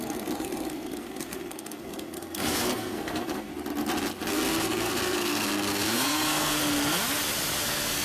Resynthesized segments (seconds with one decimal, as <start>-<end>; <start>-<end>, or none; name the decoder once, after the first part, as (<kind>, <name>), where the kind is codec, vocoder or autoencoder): 0.0-3.5 (codec, SNAC); 4.3-6.6; 7.6-8.0